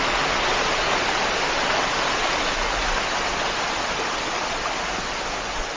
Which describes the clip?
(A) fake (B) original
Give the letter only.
B